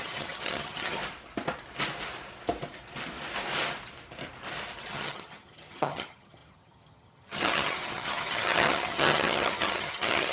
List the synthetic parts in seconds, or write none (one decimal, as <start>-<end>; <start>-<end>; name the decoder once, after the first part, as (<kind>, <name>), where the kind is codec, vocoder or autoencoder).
0.0-1.0 (vocoder, HiFi-GAN); 4.9-10.3